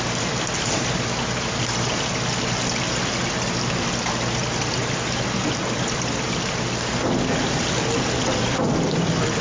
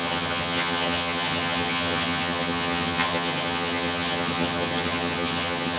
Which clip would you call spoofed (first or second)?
second